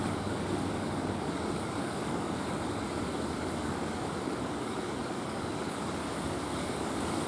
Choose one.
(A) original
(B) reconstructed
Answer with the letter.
B